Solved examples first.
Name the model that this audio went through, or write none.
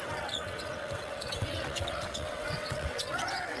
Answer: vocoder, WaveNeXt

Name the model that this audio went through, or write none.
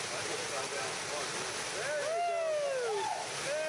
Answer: none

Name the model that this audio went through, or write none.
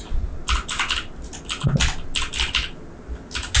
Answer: none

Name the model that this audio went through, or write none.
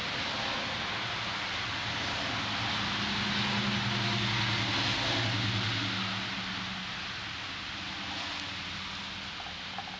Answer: none